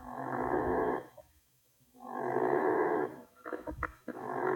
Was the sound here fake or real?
fake